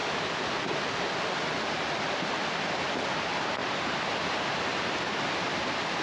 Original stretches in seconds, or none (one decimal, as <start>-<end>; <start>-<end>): 0.0-3.6; 4.1-4.7; 5.2-6.0